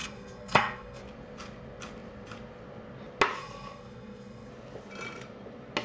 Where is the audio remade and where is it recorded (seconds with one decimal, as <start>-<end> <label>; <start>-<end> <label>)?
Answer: 0.0-1.0 remade; 1.0-3.4 recorded; 3.4-4.5 remade; 4.5-5.8 recorded